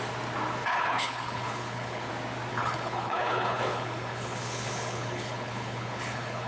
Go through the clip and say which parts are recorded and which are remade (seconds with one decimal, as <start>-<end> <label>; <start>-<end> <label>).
0.0-0.6 recorded; 0.6-2.1 remade; 2.1-2.5 recorded; 2.5-6.5 remade